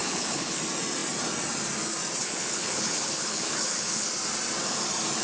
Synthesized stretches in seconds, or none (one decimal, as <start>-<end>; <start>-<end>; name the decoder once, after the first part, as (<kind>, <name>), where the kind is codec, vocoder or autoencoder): 0.0-0.6 (codec, HILCodec); 2.2-4.1